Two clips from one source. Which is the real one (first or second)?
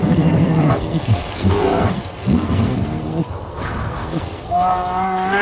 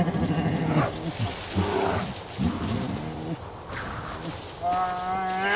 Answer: second